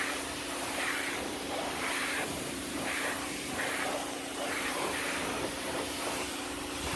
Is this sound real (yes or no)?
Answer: no